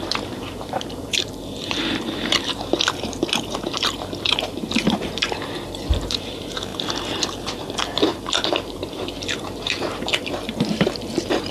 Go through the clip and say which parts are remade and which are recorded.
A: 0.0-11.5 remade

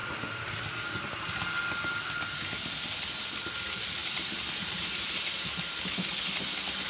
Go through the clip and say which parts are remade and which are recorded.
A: 0.0-4.0 recorded; 4.0-5.8 remade; 5.8-6.9 recorded

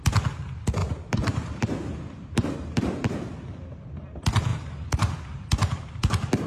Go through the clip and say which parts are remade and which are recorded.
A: 0.0-0.8 recorded; 0.8-3.2 remade; 3.2-4.5 recorded; 4.5-5.1 remade; 5.1-5.6 recorded; 5.6-6.5 remade

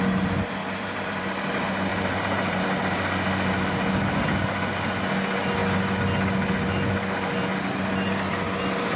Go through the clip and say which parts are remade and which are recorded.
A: 0.0-0.6 recorded; 0.6-1.5 remade; 1.5-1.9 recorded; 1.9-2.6 remade; 2.6-9.0 recorded

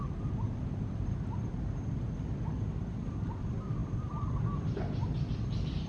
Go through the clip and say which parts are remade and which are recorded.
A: 0.0-5.9 recorded

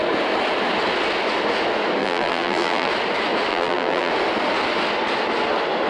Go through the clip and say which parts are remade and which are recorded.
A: 0.0-2.0 recorded; 2.0-2.9 remade; 2.9-3.5 recorded; 3.5-4.1 remade; 4.1-5.9 recorded

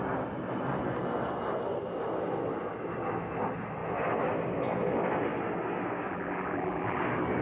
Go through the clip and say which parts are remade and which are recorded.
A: 0.0-6.1 recorded; 6.1-7.0 remade; 7.0-7.4 recorded

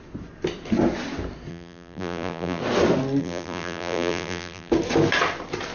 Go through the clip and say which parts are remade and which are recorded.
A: 0.0-1.5 recorded; 1.5-2.6 remade; 2.6-3.2 recorded; 3.2-4.7 remade; 4.7-5.7 recorded